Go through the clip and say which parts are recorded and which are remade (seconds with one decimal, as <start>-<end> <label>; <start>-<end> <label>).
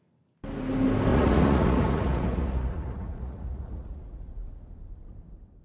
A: 0.0-1.1 recorded; 1.1-4.5 remade; 4.5-5.6 recorded